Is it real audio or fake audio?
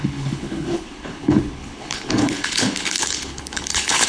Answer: fake